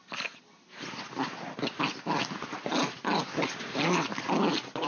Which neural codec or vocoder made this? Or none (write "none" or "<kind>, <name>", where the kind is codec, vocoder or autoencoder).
none